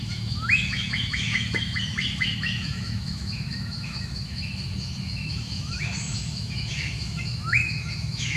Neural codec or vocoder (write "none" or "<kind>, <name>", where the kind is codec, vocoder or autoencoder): autoencoder, DAC-VAE